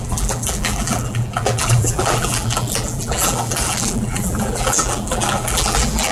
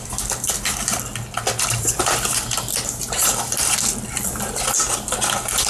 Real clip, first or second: second